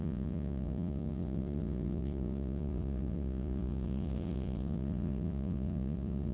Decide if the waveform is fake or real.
fake